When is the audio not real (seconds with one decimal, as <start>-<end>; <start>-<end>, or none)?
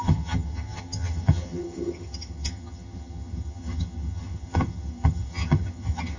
0.0-6.2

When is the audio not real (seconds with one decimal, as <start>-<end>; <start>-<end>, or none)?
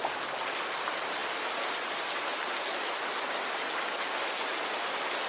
none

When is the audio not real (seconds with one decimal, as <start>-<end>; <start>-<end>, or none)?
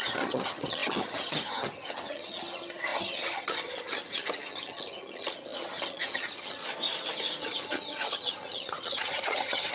0.0-6.6; 7.4-9.7